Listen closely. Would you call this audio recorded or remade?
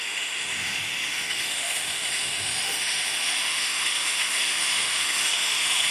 remade